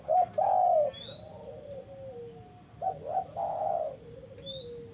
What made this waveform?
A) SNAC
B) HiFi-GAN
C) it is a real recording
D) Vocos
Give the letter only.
C